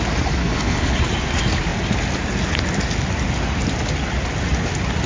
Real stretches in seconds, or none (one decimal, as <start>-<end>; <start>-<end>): 0.0-0.4; 1.0-5.1